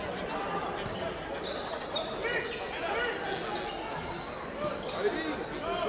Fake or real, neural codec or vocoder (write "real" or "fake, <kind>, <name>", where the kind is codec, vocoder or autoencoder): real